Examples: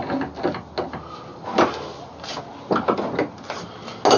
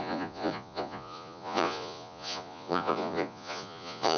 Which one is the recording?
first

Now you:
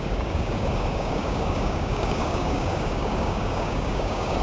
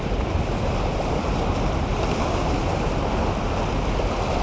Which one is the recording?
second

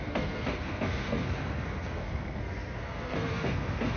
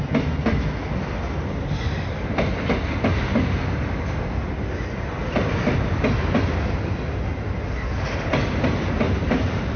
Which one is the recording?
second